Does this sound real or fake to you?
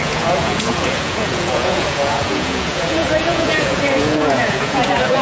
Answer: fake